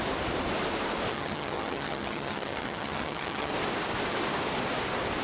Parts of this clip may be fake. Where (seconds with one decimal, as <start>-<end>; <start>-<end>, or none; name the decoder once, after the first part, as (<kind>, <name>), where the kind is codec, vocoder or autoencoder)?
1.1-3.5 (vocoder, HiFi-GAN)